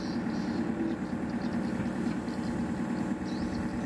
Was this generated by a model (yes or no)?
no